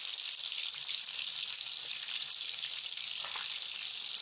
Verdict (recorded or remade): recorded